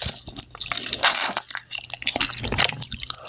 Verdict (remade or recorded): recorded